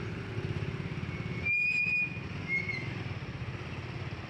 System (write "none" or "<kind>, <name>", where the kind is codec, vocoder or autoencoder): none